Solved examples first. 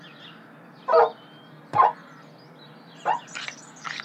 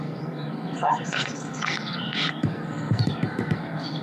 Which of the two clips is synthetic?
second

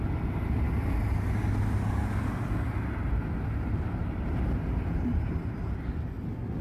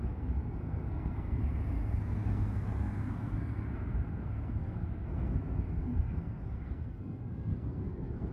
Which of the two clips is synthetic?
second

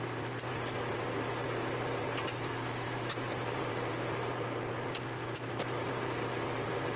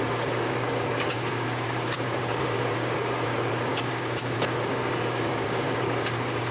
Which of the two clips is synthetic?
second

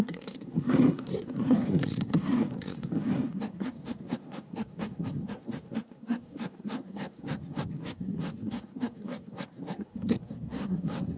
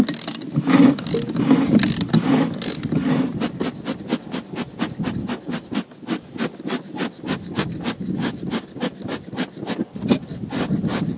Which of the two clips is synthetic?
first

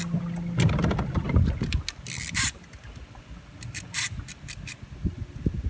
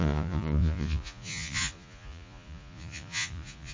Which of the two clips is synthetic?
second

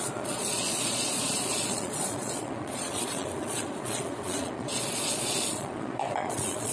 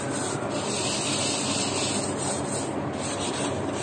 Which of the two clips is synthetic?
first